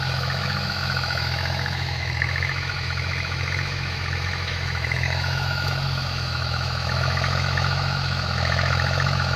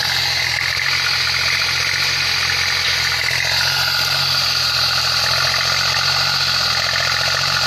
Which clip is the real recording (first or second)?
second